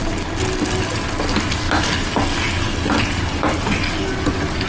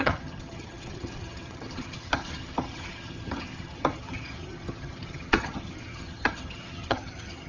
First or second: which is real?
first